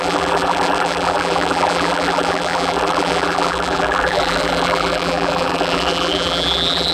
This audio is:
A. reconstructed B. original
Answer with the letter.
A